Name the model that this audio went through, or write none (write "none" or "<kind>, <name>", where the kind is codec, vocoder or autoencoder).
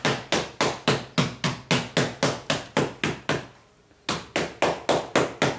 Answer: none